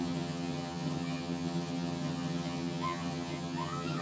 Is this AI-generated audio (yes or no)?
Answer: yes